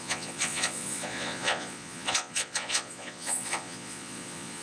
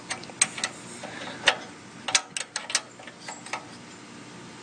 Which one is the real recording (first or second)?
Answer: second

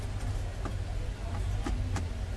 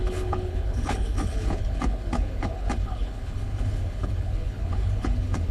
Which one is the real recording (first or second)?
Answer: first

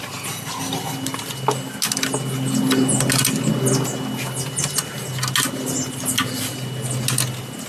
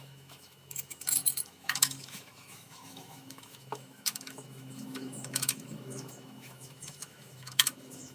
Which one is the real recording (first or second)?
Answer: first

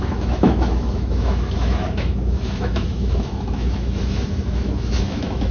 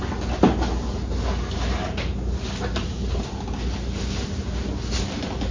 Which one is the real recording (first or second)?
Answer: second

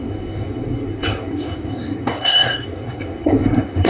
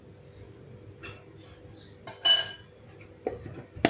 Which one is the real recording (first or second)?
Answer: second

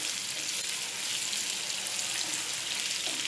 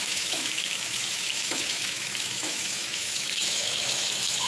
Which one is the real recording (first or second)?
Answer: first